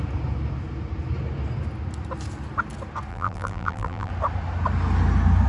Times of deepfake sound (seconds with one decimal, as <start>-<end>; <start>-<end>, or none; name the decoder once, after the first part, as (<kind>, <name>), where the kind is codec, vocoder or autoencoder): 3.1-4.1 (vocoder, BigVGAN v2)